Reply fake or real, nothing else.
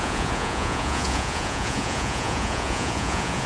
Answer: fake